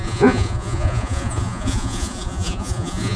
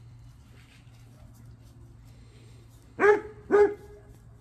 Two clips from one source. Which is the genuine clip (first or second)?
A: second